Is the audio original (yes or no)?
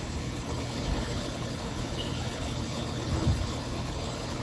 no